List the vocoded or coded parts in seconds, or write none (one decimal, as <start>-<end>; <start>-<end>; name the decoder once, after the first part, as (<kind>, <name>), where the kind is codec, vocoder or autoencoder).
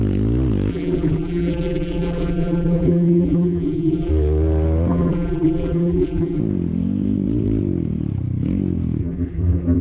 0.7-4.1 (vocoder, BigVGAN v2); 4.9-6.4; 9.0-9.8